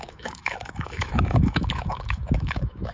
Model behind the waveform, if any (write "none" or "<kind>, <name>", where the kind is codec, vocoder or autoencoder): autoencoder, DAC-VAE